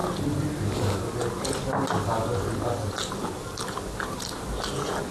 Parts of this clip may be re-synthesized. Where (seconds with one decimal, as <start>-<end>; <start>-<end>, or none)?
none